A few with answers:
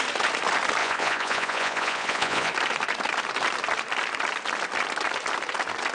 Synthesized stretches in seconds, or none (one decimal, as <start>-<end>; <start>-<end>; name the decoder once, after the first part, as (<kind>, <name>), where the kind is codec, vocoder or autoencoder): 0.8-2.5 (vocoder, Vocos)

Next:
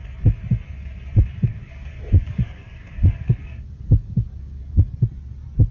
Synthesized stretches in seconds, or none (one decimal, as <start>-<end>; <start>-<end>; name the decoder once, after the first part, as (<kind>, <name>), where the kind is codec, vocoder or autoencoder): 1.5-4.8 (codec, DAC)

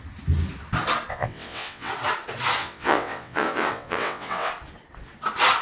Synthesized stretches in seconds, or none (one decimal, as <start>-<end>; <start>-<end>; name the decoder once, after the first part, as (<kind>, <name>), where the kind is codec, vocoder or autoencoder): 1.1-1.9 (vocoder, WaveNeXt); 2.6-4.5